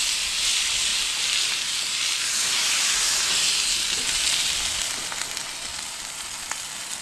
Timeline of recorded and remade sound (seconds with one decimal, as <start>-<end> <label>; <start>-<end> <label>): 0.0-5.7 recorded; 5.7-6.4 remade; 6.4-7.0 recorded

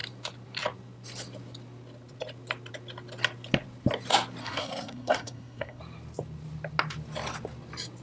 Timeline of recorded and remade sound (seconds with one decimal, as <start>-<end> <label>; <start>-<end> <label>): 0.0-4.4 recorded; 4.4-5.8 remade; 5.8-8.0 recorded